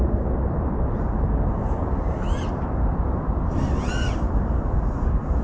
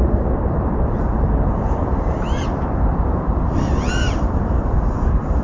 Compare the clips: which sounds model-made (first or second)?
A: second